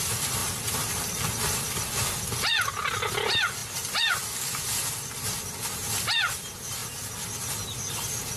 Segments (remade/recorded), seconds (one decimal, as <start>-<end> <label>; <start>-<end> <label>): 0.0-6.8 remade; 6.8-7.9 recorded; 7.9-8.4 remade